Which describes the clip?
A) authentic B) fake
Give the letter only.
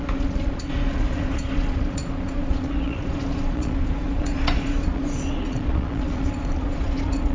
B